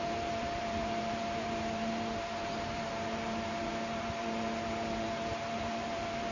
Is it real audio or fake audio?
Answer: fake